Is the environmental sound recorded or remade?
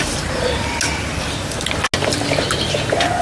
recorded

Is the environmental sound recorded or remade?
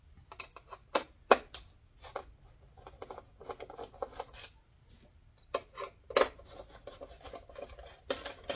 recorded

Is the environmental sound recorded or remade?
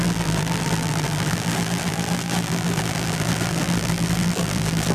remade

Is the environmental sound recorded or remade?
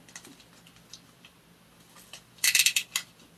recorded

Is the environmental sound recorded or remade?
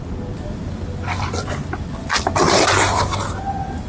recorded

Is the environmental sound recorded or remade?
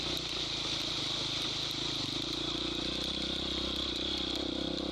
recorded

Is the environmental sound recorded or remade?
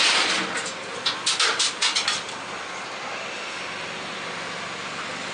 recorded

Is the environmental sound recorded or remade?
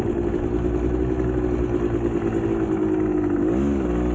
recorded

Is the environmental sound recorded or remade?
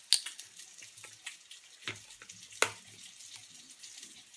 recorded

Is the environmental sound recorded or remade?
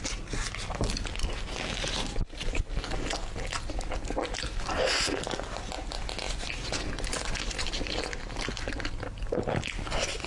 recorded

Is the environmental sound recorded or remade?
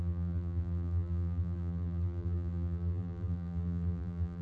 remade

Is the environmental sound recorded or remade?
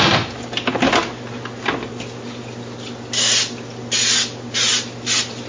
recorded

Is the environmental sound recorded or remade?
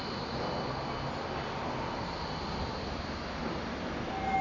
recorded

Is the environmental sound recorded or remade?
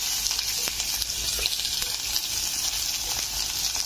recorded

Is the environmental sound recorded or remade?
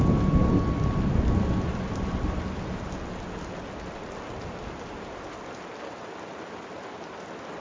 recorded